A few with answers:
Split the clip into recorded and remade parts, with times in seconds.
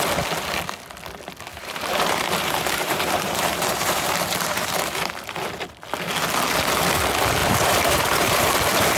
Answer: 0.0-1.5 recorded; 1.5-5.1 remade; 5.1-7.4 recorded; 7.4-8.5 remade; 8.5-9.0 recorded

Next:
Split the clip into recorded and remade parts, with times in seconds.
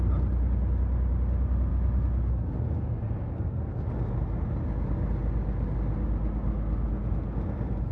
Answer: 0.0-7.9 recorded